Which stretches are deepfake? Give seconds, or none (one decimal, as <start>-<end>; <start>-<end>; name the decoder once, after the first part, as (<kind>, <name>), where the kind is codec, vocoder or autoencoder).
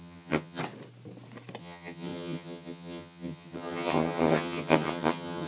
0.0-0.6 (vocoder, HiFi-GAN); 1.6-5.5